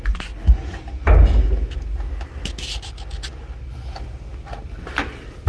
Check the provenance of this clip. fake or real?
real